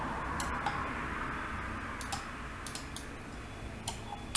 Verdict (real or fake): real